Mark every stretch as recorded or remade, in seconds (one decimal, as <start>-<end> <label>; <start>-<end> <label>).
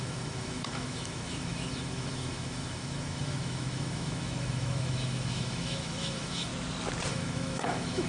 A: 0.0-6.5 remade; 6.5-7.1 recorded; 7.1-8.1 remade